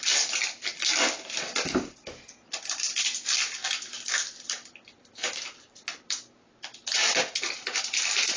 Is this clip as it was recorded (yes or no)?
yes